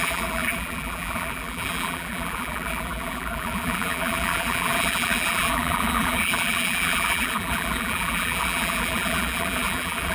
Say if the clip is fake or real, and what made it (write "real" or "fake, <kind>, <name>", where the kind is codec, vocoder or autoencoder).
fake, vocoder, BigVGAN v2